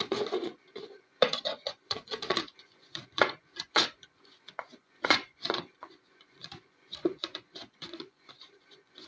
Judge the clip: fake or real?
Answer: fake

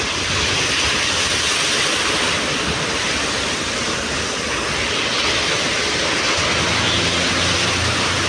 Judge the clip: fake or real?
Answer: real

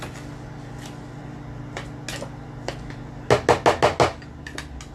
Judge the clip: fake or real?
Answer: real